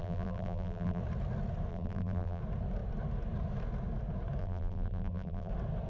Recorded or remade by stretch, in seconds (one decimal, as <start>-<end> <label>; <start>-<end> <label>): 0.0-1.0 remade; 1.0-1.7 recorded; 1.7-2.4 remade; 2.4-4.4 recorded; 4.4-5.5 remade; 5.5-5.9 recorded